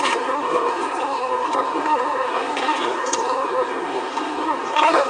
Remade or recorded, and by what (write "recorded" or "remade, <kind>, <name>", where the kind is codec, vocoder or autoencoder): remade, codec, SNAC